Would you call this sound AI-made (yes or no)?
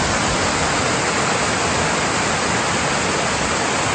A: no